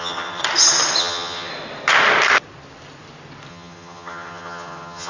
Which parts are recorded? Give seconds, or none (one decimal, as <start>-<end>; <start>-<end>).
0.4-1.0; 1.5-3.5